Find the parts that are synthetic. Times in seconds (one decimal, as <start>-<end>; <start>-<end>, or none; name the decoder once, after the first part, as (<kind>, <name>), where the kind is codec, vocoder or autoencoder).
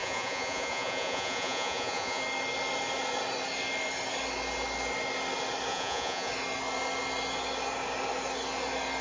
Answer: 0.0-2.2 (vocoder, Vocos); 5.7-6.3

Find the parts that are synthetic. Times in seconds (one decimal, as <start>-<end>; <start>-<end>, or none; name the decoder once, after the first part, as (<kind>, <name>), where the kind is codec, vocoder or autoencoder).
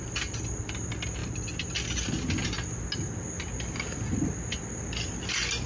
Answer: none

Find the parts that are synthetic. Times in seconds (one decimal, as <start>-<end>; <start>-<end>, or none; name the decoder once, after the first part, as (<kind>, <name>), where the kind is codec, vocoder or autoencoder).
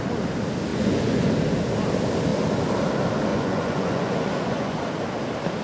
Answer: 0.7-1.3 (vocoder, Vocos); 3.3-4.8